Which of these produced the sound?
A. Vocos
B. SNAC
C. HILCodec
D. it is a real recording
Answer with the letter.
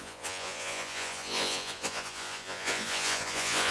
A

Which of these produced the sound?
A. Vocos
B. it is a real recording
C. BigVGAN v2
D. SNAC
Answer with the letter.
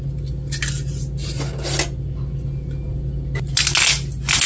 B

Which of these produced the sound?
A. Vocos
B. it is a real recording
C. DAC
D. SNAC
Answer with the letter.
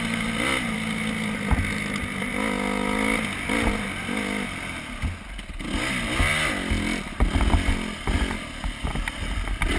B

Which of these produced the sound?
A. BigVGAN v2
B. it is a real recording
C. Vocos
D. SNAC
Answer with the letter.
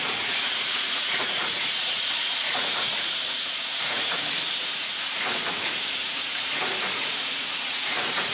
C